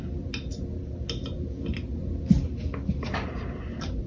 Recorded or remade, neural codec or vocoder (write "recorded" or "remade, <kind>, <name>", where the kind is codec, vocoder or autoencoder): recorded